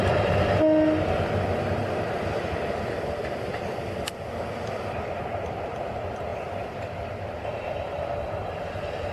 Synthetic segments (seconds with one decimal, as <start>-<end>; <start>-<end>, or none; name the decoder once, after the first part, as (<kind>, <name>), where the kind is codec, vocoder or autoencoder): none